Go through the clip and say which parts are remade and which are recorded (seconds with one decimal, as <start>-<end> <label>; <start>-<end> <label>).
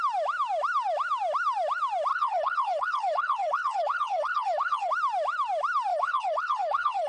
0.0-2.1 recorded; 2.1-4.9 remade; 4.9-5.9 recorded; 5.9-7.1 remade